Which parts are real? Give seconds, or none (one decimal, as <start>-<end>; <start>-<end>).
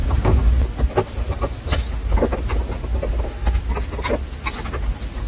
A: 0.0-3.2; 3.6-5.3